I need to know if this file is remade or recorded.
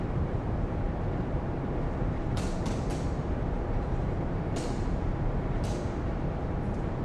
remade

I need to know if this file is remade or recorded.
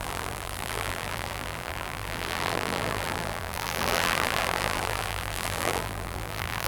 remade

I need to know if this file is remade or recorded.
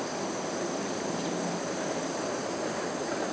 recorded